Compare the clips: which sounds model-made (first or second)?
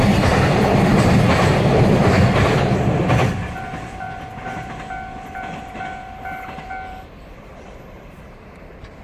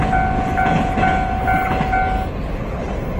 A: first